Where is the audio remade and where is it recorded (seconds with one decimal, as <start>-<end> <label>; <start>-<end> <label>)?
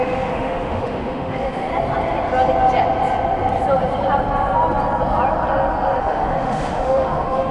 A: 0.0-1.7 remade; 1.7-6.0 recorded; 6.0-7.5 remade